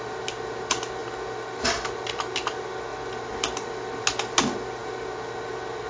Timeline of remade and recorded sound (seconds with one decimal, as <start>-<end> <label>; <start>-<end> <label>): 0.0-5.9 recorded